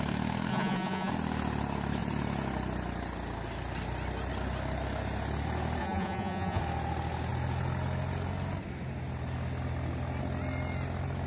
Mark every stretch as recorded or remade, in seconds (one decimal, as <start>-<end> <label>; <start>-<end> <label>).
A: 0.0-0.5 recorded; 0.5-1.1 remade; 1.1-5.8 recorded; 5.8-6.6 remade; 6.6-11.3 recorded